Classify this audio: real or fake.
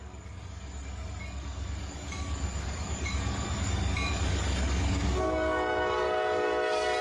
fake